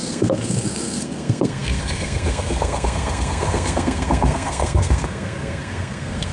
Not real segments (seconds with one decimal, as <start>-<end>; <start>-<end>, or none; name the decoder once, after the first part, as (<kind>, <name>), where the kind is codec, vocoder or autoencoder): 0.0-6.3 (codec, SNAC)